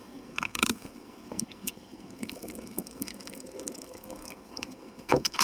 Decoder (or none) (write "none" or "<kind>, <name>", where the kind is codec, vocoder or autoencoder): codec, SNAC